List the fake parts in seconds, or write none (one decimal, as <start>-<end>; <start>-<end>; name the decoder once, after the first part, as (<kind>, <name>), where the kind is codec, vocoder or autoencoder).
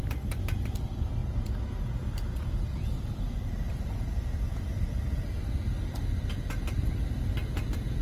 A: none